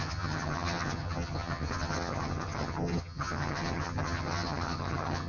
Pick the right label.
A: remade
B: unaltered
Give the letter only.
A